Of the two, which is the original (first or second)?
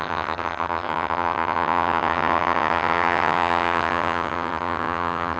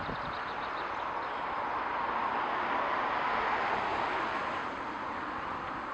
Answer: second